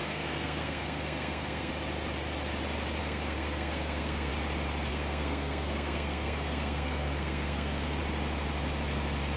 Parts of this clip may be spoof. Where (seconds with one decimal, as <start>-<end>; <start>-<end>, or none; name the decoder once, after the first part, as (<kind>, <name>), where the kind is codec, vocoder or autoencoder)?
0.0-1.7 (codec, SNAC); 3.0-4.3; 4.9-8.0